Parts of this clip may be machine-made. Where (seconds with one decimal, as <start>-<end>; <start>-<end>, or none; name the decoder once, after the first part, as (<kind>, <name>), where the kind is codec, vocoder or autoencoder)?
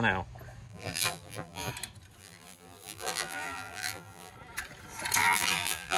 0.7-1.7 (vocoder, BigVGAN v2); 2.2-4.3; 5.2-6.0